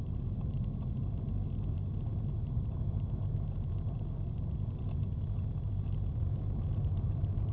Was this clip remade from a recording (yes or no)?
no